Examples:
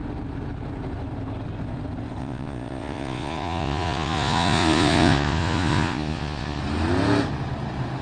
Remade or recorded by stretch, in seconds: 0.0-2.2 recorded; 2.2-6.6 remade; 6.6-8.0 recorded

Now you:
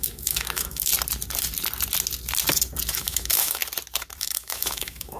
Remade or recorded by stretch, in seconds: 0.0-0.9 remade; 0.9-2.9 recorded; 2.9-3.6 remade; 3.6-4.2 recorded; 4.2-5.2 remade

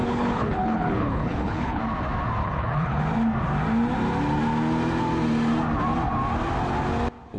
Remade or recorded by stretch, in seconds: 0.0-1.8 remade; 1.8-2.4 recorded; 2.4-3.0 remade; 3.0-7.4 recorded

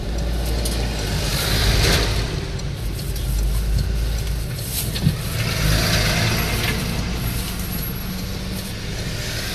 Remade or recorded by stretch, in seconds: 0.0-1.3 recorded; 1.3-3.2 remade; 3.2-9.5 recorded

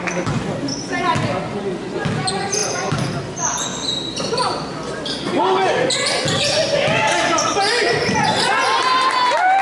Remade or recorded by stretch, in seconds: 0.0-9.6 recorded